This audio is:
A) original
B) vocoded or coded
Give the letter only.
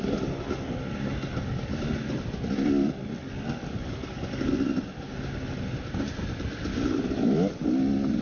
A